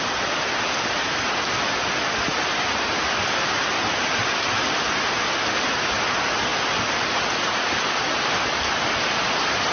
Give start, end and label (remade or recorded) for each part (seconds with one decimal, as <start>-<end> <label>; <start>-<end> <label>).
0.0-9.7 recorded